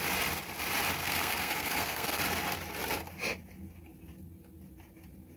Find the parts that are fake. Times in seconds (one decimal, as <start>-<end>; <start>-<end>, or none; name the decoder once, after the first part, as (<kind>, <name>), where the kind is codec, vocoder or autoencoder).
1.0-2.2 (codec, SNAC)